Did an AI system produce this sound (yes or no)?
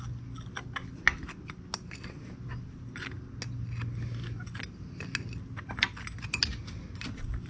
no